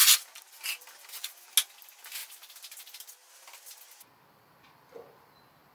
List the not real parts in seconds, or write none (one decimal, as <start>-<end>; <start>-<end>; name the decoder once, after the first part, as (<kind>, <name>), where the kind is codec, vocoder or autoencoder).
none